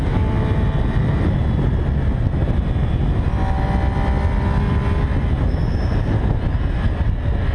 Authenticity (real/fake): real